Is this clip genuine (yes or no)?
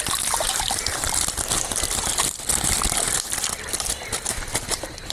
yes